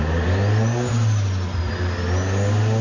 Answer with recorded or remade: recorded